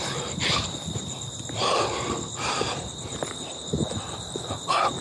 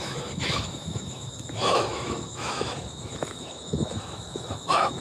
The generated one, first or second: second